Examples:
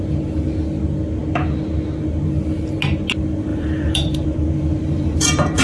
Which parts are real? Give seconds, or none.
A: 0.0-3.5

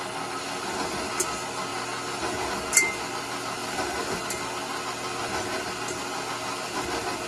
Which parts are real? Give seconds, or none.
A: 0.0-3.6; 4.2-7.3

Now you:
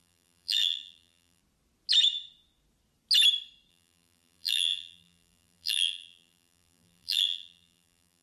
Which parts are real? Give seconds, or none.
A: 1.4-3.7

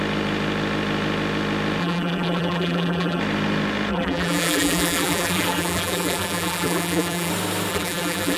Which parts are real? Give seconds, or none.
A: 0.0-1.8; 3.2-3.9; 7.3-7.7

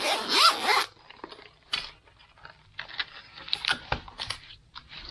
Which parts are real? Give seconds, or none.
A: 0.0-3.0; 3.7-5.1